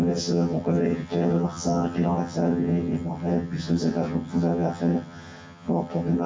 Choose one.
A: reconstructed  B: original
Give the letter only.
A